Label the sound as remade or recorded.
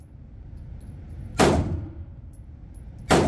recorded